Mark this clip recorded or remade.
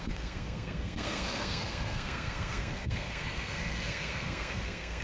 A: remade